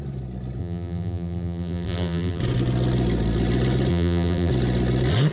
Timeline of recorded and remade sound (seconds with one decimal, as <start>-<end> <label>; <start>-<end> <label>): 0.0-0.6 recorded; 0.6-2.4 remade; 2.4-3.9 recorded; 3.9-4.5 remade; 4.5-5.3 recorded